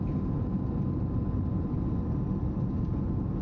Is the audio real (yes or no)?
yes